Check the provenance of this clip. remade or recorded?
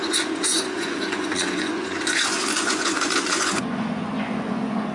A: remade